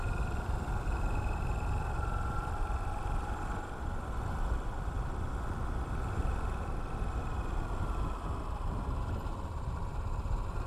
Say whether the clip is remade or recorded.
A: recorded